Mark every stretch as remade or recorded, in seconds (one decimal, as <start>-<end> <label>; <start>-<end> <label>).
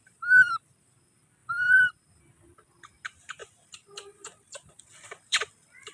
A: 0.0-0.5 remade; 0.5-1.4 recorded; 1.4-2.2 remade; 2.2-3.4 recorded; 3.4-5.5 remade; 5.5-5.9 recorded